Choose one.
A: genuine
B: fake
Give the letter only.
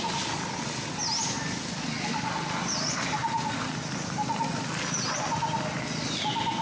A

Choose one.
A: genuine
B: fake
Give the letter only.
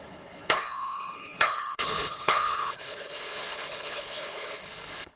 B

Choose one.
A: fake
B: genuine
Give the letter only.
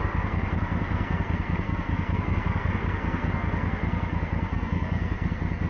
A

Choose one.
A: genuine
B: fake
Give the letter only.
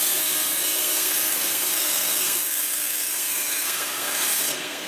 B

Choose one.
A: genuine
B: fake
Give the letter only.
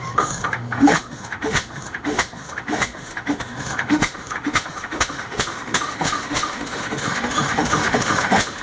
B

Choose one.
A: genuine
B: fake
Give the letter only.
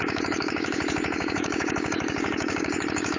B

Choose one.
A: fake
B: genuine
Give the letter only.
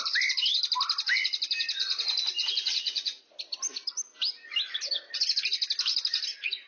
B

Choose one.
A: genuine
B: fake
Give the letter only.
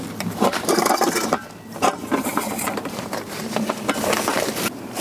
B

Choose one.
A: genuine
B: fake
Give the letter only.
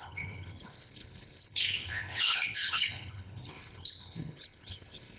B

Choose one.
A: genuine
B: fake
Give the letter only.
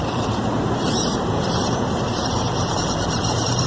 B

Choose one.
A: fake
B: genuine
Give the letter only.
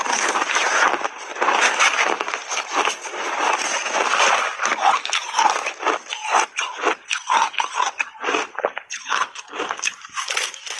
A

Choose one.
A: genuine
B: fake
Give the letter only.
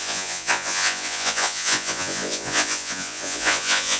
B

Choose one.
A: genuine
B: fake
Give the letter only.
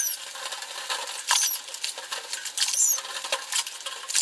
A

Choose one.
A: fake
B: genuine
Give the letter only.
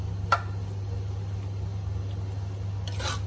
B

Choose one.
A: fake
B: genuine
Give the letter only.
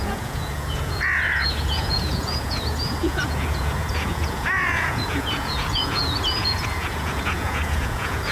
A